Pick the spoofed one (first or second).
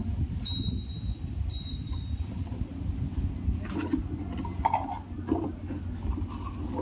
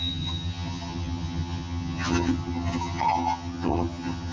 second